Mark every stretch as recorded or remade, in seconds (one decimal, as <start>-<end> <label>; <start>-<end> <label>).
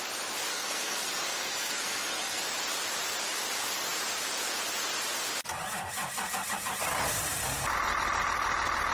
0.0-0.5 recorded; 0.5-2.4 remade; 2.4-8.9 recorded